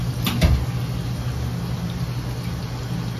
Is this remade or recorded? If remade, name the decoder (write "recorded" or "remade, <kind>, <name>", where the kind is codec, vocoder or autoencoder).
recorded